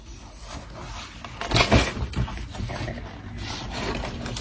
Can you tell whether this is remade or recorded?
recorded